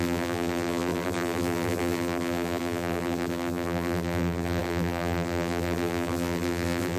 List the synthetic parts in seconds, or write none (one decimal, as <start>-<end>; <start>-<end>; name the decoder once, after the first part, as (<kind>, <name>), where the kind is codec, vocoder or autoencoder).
0.0-7.0 (vocoder, BigVGAN v2)